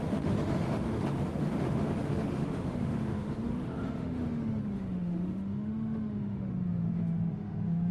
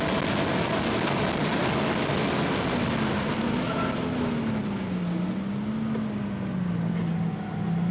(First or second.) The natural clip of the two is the second